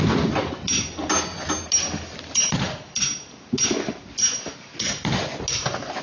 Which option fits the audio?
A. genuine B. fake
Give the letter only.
A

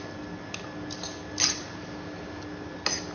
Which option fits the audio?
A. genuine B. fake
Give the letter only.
A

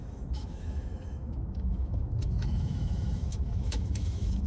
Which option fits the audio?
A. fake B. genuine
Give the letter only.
A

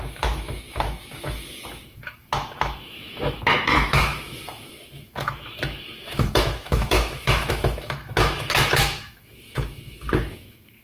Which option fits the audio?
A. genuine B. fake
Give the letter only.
B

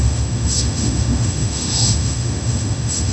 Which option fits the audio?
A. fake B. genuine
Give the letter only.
A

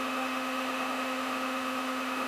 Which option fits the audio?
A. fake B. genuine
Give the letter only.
A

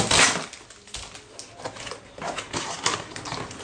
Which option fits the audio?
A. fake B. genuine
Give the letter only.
B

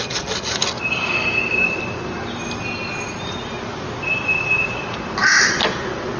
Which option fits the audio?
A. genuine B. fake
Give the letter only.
A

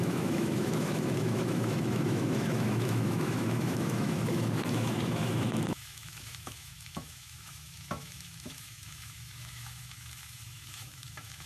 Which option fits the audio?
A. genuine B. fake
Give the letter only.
B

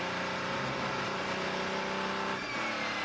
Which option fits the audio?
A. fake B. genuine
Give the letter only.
B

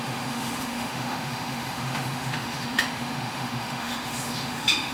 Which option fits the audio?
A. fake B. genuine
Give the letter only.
A